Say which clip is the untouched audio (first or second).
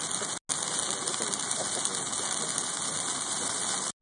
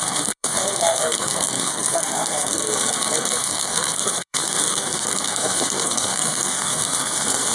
first